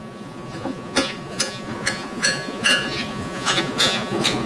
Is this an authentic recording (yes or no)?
no